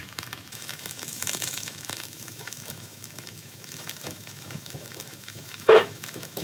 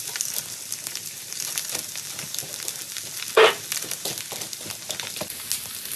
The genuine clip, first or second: second